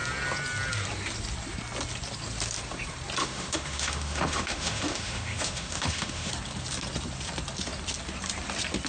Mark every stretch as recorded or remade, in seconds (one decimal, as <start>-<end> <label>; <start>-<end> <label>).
0.0-3.2 recorded; 3.2-6.3 remade; 6.3-8.9 recorded